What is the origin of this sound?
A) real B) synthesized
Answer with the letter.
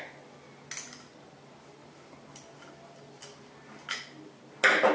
A